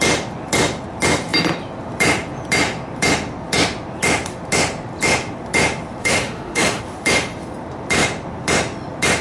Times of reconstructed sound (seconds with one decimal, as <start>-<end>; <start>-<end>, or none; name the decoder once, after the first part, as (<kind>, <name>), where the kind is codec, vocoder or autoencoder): 6.0-6.8 (autoencoder, DAC-VAE)